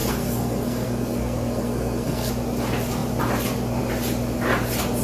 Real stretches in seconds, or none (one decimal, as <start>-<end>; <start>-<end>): 2.3-5.0